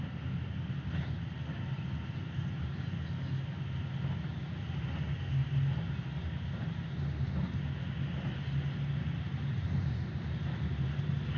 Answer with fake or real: real